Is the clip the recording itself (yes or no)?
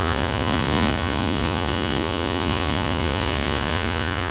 no